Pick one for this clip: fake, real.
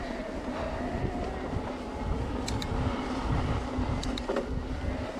real